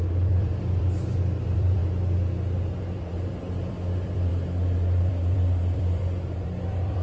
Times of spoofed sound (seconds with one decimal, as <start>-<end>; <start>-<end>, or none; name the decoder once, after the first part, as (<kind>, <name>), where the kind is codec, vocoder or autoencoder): 0.0-1.8 (vocoder, BigVGAN v2); 2.8-4.3; 5.1-7.0